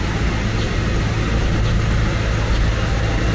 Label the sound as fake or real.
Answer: real